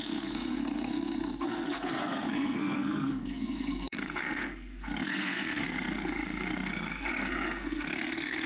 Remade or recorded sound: remade